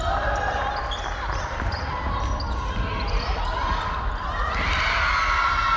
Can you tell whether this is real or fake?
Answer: real